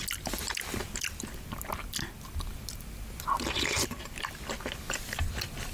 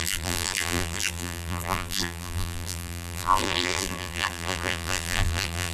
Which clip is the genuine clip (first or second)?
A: first